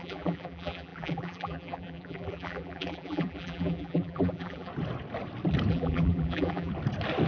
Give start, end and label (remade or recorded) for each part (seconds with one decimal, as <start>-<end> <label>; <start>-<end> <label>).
0.0-4.7 remade; 4.7-5.7 recorded; 5.7-6.7 remade; 6.7-7.3 recorded